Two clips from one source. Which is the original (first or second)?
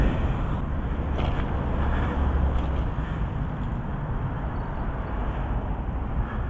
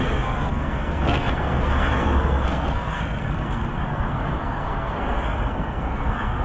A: first